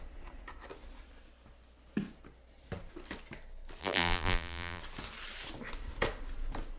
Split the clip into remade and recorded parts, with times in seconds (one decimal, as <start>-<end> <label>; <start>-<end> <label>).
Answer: 0.0-3.8 recorded; 3.8-4.8 remade; 4.8-6.8 recorded

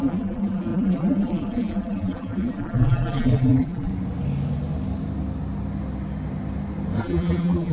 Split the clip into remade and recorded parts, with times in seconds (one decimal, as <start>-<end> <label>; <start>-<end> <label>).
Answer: 0.0-3.9 remade; 3.9-7.0 recorded; 7.0-7.7 remade

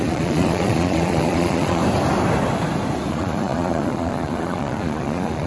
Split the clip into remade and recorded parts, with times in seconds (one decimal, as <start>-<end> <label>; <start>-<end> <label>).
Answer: 0.0-1.8 remade; 1.8-3.1 recorded; 3.1-5.5 remade

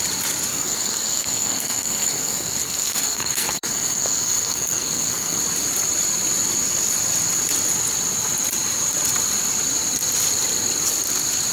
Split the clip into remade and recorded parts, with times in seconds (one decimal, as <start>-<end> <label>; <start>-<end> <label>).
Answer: 0.0-0.5 recorded; 0.5-5.4 remade; 5.4-11.5 recorded

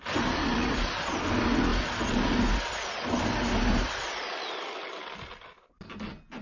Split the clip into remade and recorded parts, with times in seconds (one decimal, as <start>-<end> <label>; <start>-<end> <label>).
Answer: 0.0-0.5 recorded; 0.5-1.1 remade; 1.1-6.4 recorded